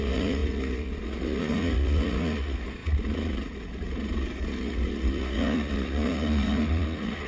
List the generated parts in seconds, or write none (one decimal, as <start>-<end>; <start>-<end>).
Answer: 0.0-7.3